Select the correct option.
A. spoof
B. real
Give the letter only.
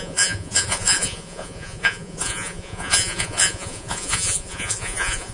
A